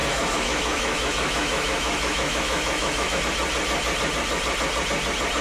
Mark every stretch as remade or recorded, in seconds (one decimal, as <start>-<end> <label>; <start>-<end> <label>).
0.0-3.2 remade; 3.2-5.4 recorded